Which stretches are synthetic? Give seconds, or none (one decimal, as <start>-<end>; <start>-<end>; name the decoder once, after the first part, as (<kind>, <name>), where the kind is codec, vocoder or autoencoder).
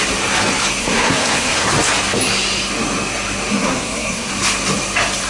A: 0.8-1.7 (codec, SNAC); 3.5-4.3